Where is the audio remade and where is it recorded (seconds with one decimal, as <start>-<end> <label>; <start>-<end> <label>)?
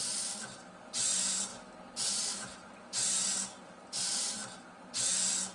0.0-1.5 remade; 1.5-2.1 recorded; 2.1-4.4 remade; 4.4-5.5 recorded